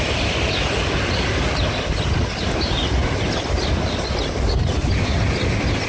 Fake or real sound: real